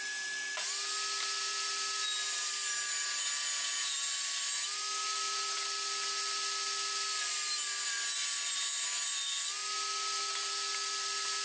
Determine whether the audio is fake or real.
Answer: real